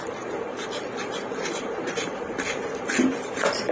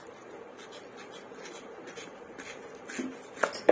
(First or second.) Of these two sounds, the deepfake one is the first